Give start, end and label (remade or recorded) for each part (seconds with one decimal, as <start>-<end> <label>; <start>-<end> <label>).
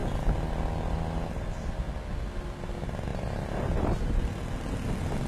0.0-3.1 recorded; 3.1-4.1 remade; 4.1-5.3 recorded